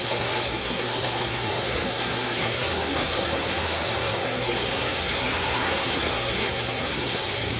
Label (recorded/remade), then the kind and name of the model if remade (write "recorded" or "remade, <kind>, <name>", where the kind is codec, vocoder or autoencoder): remade, codec, SNAC